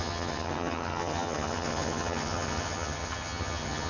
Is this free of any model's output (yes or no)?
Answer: no